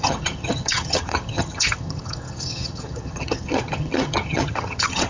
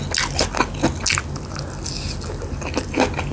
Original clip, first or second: second